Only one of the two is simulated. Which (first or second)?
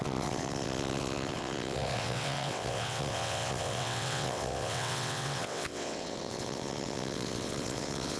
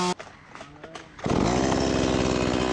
first